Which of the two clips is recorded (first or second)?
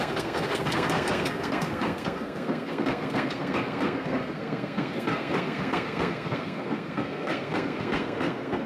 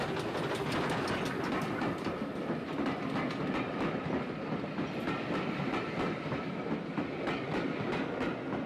second